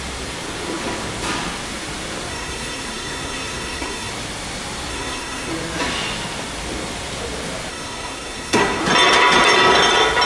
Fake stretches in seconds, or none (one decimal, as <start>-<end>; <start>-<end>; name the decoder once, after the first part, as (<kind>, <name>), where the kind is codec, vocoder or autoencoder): 2.3-4.1 (codec, SNAC); 4.9-5.5; 7.7-8.8